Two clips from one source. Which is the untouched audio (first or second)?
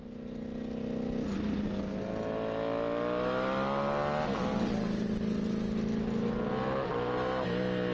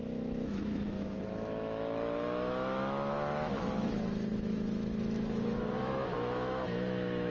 first